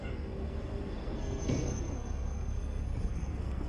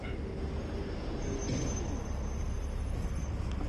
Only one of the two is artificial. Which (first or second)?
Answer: first